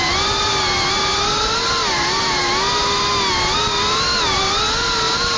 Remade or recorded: recorded